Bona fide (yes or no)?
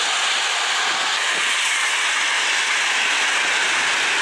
yes